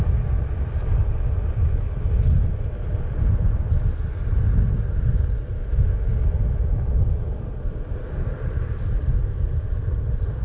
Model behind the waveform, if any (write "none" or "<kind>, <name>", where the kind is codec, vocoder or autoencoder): none